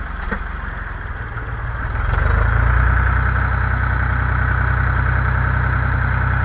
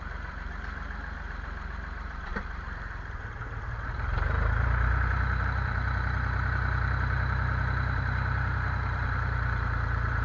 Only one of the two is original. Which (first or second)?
first